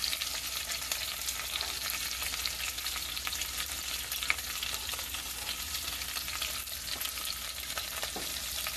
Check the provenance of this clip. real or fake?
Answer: real